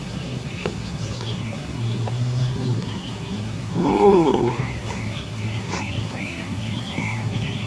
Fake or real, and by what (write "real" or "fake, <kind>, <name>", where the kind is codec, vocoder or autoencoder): fake, codec, SNAC